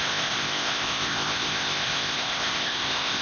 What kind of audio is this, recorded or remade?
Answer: remade